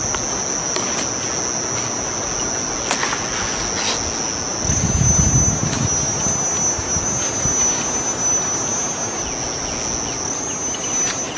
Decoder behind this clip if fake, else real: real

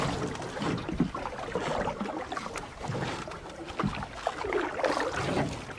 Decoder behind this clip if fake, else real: real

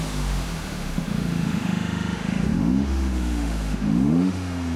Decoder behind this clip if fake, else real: fake, autoencoder, DAC-VAE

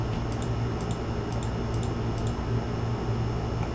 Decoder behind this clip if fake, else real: real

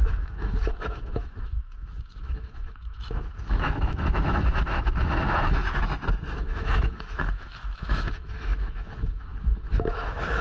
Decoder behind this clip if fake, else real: fake, autoencoder, DAC-VAE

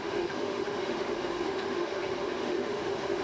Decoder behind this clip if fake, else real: fake, autoencoder, DAC-VAE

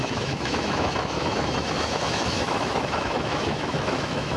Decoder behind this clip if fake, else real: fake, autoencoder, DAC-VAE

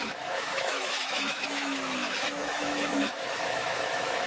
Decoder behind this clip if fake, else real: fake, autoencoder, DAC-VAE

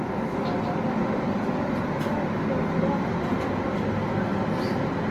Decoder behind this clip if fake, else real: real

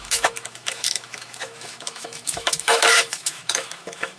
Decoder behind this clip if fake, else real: fake, autoencoder, DAC-VAE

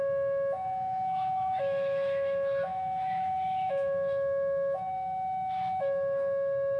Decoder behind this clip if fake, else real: fake, autoencoder, DAC-VAE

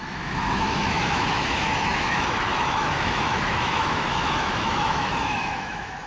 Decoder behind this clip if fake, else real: fake, autoencoder, DAC-VAE